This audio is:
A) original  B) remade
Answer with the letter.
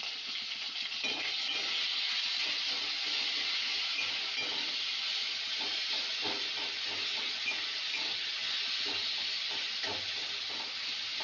A